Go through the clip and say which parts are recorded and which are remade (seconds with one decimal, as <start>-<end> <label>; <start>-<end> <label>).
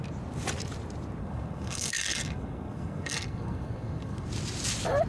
0.0-1.2 recorded; 1.2-4.3 remade; 4.3-5.1 recorded